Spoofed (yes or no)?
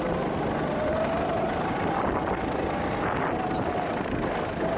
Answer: no